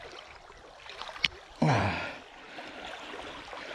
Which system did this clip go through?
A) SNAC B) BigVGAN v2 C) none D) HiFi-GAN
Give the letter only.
C